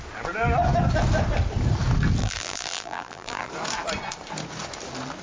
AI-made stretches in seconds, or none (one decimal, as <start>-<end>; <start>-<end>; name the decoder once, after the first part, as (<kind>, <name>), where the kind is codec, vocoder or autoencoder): 2.2-3.5 (vocoder, BigVGAN v2)